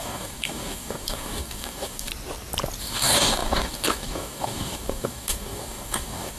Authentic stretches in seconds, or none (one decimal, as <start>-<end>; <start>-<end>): 2.1-2.8